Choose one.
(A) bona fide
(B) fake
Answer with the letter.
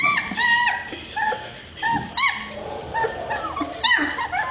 A